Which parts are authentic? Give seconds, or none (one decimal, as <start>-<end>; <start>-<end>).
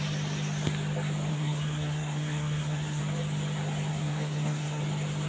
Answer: 0.0-1.3; 3.0-3.9; 4.8-5.3